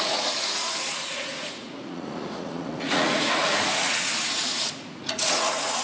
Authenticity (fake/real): fake